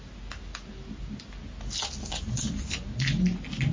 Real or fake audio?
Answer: real